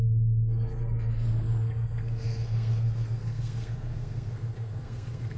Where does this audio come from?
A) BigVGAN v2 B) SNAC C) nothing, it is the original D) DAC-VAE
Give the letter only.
B